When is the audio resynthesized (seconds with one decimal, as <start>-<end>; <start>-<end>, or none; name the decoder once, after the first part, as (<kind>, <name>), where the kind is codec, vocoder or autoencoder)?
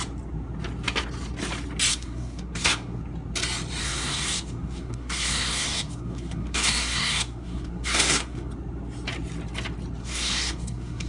1.9-3.0 (codec, SNAC); 3.8-8.5; 10.0-11.1